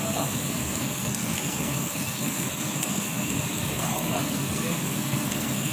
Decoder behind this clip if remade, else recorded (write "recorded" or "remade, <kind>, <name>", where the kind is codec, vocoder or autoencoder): remade, codec, SNAC